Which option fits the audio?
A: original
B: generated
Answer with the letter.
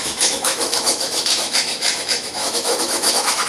B